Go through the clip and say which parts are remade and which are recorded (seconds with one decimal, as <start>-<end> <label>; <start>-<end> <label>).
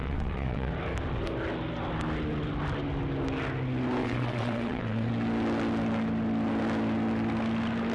0.0-0.7 remade; 0.7-4.0 recorded; 4.0-5.1 remade; 5.1-7.9 recorded